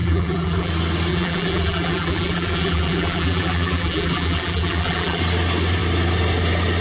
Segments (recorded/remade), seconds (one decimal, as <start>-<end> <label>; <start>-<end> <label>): 0.0-0.7 remade; 0.7-1.1 recorded; 1.1-5.2 remade; 5.2-6.8 recorded